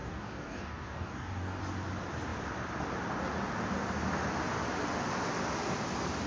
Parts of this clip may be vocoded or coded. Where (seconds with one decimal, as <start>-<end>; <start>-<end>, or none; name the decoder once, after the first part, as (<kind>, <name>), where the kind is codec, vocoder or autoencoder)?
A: 0.0-1.6 (codec, DAC)